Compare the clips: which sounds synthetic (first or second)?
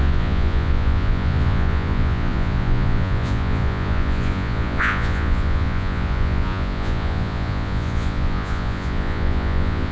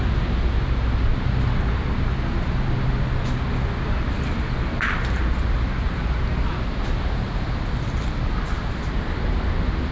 first